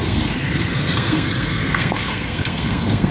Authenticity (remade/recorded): remade